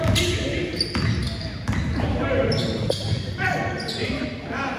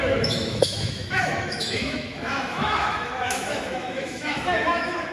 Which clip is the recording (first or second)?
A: first